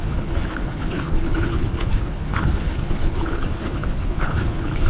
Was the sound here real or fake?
fake